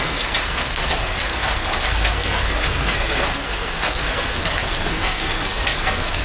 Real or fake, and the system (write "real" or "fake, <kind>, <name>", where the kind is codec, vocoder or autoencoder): fake, codec, SNAC